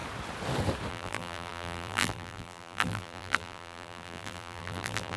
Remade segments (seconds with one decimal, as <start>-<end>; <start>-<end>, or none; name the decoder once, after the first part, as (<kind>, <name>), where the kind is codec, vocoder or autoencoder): 0.9-5.2 (vocoder, BigVGAN v2)

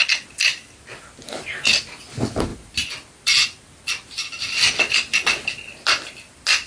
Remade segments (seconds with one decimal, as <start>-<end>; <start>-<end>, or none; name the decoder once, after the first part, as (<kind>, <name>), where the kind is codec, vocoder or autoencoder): none

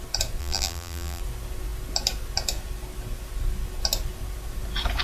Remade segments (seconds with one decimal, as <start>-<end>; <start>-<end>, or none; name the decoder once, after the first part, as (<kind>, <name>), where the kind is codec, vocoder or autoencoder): 0.4-1.2 (vocoder, BigVGAN v2)

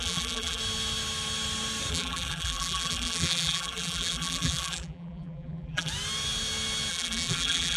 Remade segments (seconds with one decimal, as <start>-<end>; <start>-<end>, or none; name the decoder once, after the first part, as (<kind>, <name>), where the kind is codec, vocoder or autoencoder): 0.0-0.6 (vocoder, BigVGAN v2); 1.9-5.9; 6.9-7.8

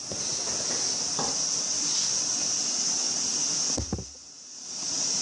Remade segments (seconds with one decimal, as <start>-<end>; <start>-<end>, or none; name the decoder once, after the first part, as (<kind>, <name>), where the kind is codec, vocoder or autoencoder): 4.5-5.2 (vocoder, BigVGAN v2)

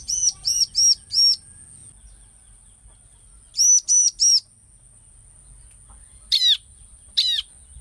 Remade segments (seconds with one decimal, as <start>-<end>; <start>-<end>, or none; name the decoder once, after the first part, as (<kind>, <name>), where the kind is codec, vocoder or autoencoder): 0.0-0.6 (vocoder, BigVGAN v2)

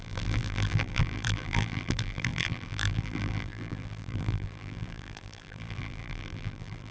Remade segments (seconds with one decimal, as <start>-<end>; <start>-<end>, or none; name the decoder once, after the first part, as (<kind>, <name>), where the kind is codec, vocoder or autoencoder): 0.0-6.9 (vocoder, BigVGAN v2)